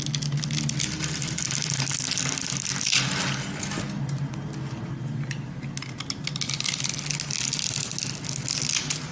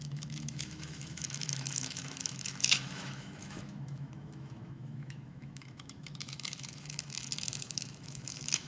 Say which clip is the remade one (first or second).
second